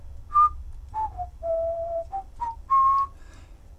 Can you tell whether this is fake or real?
real